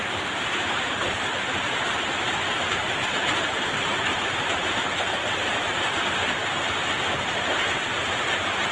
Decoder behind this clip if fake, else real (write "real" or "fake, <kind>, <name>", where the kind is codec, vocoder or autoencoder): fake, vocoder, BigVGAN v2